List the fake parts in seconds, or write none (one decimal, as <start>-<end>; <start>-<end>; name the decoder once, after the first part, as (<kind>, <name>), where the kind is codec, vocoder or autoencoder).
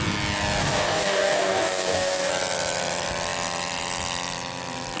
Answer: 0.6-2.3 (codec, DAC)